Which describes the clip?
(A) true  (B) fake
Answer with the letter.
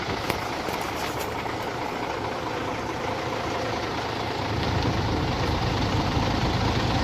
B